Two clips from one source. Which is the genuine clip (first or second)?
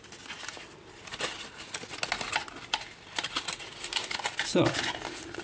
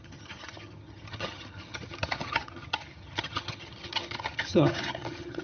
first